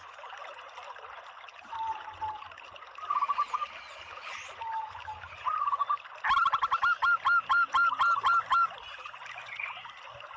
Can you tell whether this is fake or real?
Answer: real